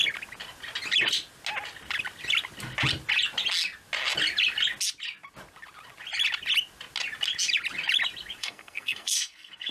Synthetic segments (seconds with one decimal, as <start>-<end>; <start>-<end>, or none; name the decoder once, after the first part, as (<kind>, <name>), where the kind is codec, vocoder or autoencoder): 8.4-9.7 (codec, SNAC)